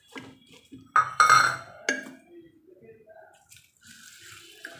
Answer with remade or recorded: recorded